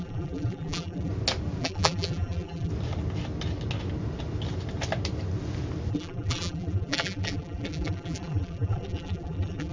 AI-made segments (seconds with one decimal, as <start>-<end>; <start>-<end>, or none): 0.0-1.1; 1.6-2.7; 5.9-9.7